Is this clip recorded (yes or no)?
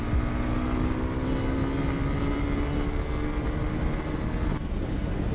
yes